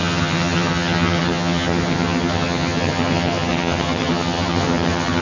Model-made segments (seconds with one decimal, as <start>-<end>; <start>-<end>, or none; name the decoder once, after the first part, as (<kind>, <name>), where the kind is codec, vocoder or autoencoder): 0.0-5.2 (vocoder, HiFi-GAN)